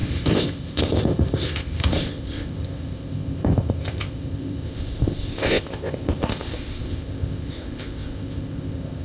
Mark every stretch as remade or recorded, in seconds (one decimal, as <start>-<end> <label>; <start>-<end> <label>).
0.0-9.0 remade